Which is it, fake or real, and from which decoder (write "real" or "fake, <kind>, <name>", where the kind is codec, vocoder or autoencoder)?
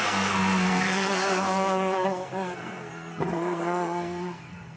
fake, codec, SNAC